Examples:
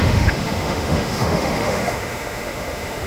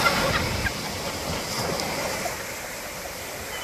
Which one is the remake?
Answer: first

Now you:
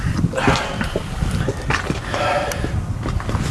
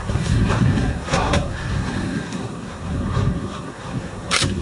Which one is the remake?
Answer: second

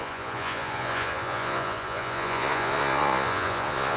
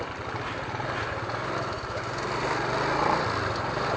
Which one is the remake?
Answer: first